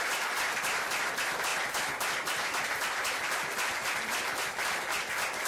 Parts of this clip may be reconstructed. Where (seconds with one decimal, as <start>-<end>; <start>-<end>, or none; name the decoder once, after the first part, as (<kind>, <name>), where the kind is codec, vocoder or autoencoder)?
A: none

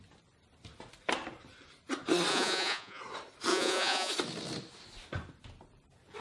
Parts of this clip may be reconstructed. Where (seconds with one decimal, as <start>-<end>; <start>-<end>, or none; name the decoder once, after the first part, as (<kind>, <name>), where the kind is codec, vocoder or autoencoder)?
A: 2.3-3.0 (vocoder, Vocos); 3.5-4.1

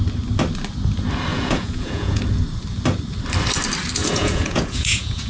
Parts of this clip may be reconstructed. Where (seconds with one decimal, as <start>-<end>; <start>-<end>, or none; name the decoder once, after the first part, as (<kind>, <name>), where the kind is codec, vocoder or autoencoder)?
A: 1.3-2.2 (vocoder, Vocos); 4.0-5.3

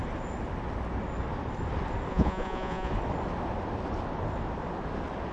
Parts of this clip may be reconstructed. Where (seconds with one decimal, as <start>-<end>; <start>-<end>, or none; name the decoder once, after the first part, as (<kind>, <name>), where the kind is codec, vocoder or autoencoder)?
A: 2.1-2.9 (vocoder, Vocos)

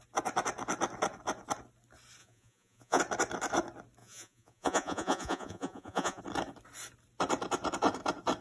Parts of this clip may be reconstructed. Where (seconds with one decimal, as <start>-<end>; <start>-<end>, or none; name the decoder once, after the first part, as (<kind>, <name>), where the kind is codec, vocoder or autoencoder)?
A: 2.2-3.0 (vocoder, Vocos); 4.0-6.2

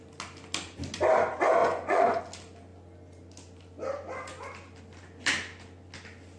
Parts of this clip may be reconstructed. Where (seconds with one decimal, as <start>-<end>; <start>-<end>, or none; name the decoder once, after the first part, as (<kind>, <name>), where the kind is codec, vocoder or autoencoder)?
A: 1.6-2.2 (vocoder, Vocos)